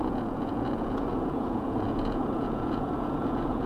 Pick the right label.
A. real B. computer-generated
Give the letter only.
B